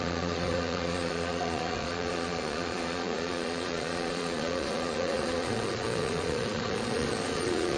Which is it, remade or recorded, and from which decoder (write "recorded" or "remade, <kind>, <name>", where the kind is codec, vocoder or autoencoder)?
remade, vocoder, Vocos